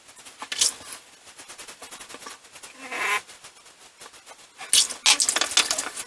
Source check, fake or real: real